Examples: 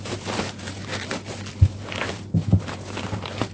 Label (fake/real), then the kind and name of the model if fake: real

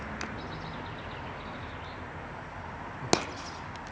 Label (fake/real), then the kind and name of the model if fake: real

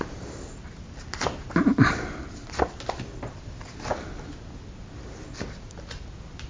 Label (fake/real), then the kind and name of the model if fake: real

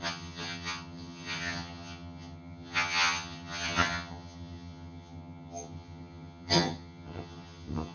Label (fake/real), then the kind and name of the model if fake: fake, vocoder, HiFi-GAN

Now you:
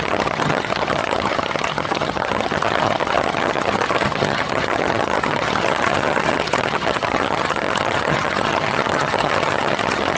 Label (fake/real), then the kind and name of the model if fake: fake, vocoder, HiFi-GAN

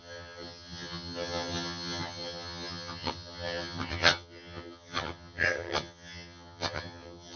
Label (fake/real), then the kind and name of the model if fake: fake, vocoder, HiFi-GAN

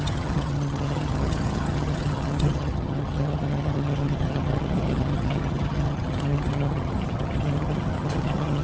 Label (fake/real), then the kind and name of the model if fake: fake, vocoder, HiFi-GAN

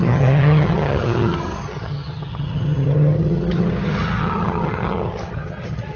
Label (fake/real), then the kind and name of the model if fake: fake, vocoder, HiFi-GAN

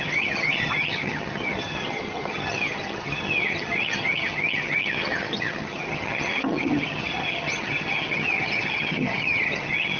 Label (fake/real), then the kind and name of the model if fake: fake, vocoder, HiFi-GAN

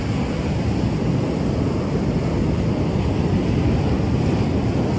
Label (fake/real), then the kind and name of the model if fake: real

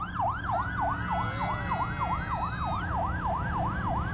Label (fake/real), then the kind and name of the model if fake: real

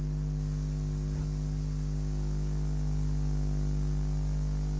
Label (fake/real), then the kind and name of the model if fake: real